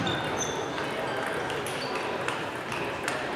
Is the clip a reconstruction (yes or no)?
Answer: no